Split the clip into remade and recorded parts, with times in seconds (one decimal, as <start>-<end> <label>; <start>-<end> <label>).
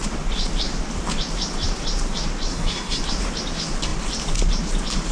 0.0-2.5 recorded; 2.5-3.0 remade; 3.0-5.1 recorded